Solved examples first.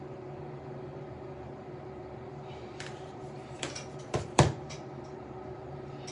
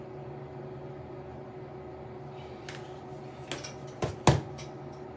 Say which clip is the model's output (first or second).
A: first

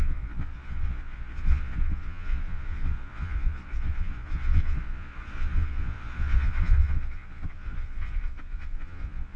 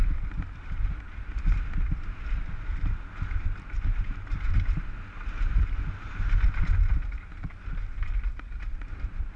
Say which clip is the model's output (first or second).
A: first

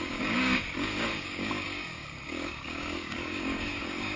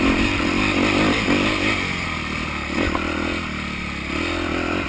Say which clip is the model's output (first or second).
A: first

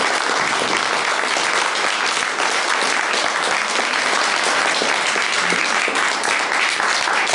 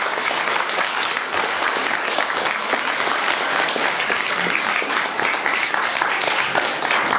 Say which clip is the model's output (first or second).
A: second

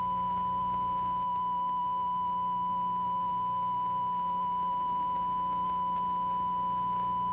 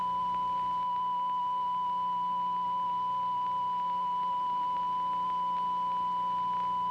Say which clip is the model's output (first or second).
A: first